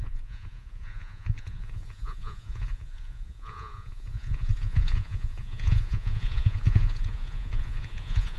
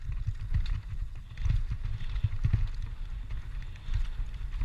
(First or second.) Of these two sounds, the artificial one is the first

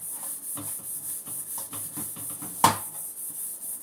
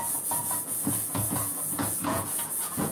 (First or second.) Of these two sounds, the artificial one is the second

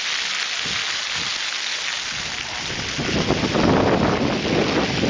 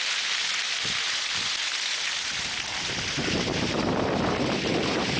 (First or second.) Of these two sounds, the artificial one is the second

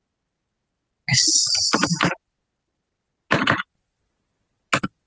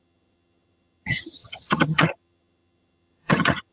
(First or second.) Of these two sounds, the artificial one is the second